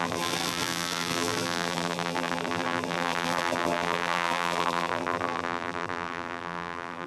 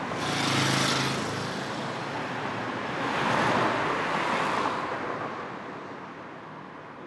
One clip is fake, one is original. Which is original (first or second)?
second